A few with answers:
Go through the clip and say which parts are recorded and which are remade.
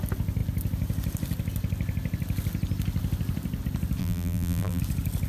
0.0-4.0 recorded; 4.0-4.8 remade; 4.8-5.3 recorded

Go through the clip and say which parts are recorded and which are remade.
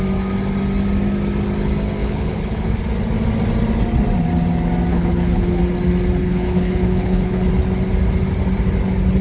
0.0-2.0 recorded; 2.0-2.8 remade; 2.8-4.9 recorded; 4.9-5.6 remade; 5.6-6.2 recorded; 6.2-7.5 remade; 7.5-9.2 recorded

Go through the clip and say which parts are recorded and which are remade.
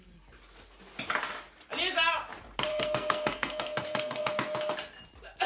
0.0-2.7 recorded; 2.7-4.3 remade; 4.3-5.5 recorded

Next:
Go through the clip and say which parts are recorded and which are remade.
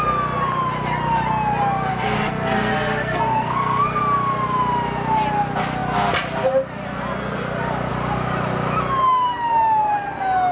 0.0-1.9 recorded; 1.9-4.0 remade; 4.0-10.5 recorded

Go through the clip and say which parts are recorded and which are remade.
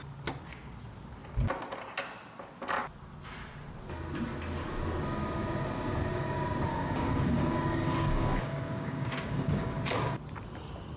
0.0-6.7 recorded; 6.7-9.8 remade; 9.8-11.0 recorded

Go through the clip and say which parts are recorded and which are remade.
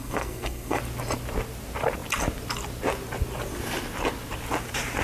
0.0-0.8 remade; 0.8-5.0 recorded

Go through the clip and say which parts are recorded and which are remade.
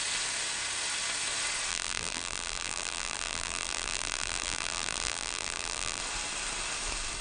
0.0-1.7 recorded; 1.7-6.0 remade; 6.0-7.2 recorded